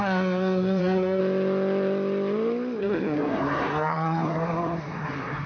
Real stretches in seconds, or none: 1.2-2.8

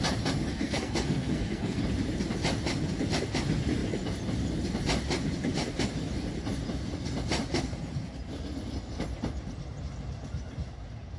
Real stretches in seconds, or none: 0.0-0.5; 1.8-11.2

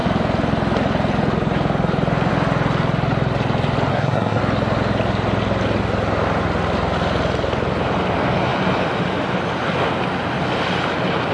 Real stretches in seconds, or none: 0.0-3.9; 4.4-11.3

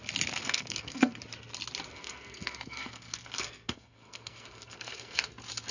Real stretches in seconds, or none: 0.0-0.4; 1.2-1.9; 5.3-5.7